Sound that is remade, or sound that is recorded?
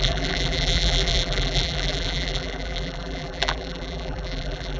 remade